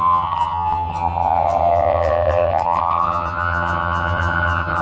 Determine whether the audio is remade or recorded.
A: remade